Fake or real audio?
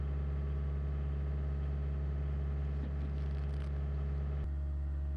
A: real